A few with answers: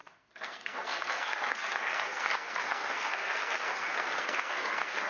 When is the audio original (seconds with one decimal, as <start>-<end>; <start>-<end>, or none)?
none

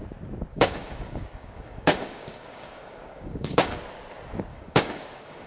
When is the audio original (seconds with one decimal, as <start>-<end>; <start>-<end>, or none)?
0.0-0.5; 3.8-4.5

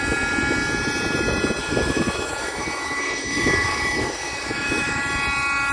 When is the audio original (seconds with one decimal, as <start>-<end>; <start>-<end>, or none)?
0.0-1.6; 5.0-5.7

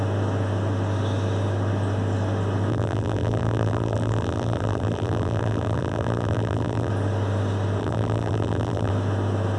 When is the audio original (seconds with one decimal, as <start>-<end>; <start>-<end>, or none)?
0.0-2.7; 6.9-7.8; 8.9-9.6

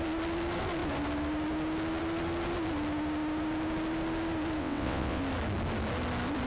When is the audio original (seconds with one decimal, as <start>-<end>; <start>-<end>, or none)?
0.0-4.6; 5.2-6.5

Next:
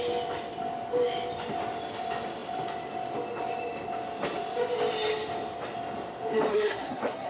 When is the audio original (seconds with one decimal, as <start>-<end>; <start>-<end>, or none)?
0.0-6.5

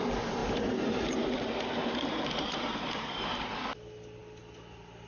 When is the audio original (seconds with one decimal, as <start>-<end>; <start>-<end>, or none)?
0.0-0.4; 3.5-5.1